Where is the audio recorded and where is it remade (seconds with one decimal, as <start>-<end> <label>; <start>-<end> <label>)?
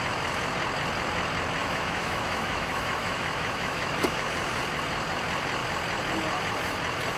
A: 0.0-1.6 recorded; 1.6-4.3 remade; 4.3-7.2 recorded